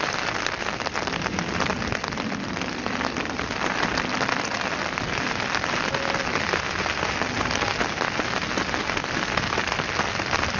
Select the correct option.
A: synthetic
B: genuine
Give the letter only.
B